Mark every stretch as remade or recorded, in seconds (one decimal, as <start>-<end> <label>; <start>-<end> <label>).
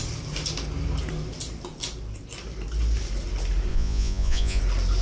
0.0-3.7 recorded; 3.7-4.6 remade; 4.6-5.0 recorded